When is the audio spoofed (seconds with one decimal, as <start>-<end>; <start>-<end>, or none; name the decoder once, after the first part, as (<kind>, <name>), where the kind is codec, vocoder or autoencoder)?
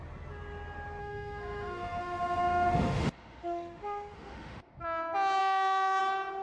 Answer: 1.0-4.7 (autoencoder, DAC-VAE); 5.4-6.0